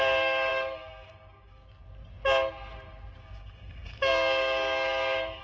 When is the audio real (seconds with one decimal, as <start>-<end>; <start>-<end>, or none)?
1.6-3.2